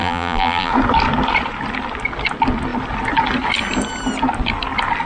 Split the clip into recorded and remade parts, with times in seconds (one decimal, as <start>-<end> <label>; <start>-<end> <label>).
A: 0.0-0.7 remade; 0.7-5.1 recorded